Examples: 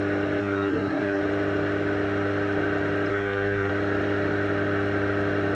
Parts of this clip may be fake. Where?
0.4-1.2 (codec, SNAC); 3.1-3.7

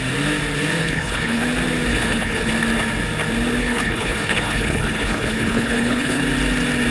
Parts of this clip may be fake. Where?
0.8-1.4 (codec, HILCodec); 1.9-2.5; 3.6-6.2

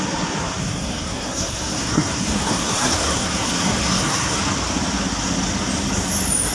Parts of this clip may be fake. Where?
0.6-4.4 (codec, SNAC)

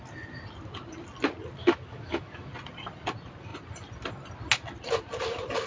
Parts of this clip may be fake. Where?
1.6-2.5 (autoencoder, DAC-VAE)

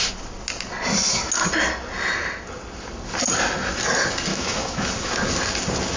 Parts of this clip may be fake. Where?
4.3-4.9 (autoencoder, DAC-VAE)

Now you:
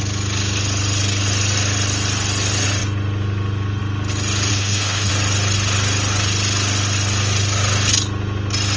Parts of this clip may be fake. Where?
4.5-5.1 (codec, HILCodec)

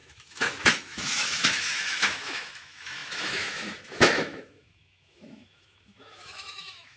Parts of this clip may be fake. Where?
0.0-7.0 (autoencoder, DAC-VAE)

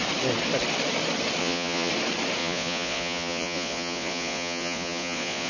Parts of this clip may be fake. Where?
1.4-1.9 (vocoder, Vocos); 2.4-5.5